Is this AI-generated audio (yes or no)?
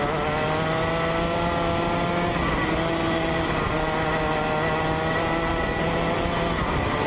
no